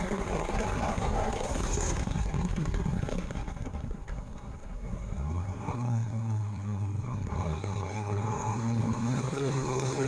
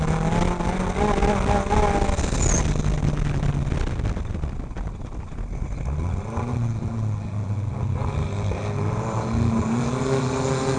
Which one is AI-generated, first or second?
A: first